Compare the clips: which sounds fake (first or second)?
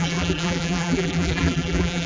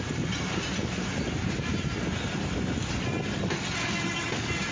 first